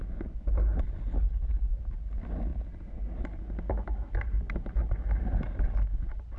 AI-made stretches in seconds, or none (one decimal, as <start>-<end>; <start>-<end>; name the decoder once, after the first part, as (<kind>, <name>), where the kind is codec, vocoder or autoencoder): 1.1-1.7 (codec, HILCodec)